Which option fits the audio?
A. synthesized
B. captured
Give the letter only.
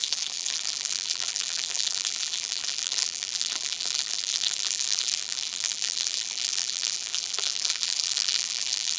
A